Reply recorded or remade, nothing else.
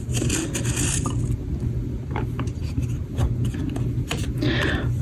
recorded